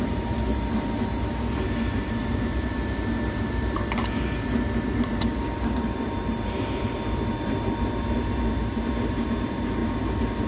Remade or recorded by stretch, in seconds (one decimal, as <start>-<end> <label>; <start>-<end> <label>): 0.0-10.5 remade